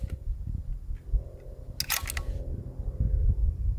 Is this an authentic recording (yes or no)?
yes